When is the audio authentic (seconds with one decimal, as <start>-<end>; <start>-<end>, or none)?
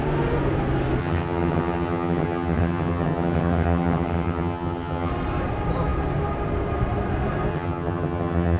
0.0-1.0; 5.1-7.5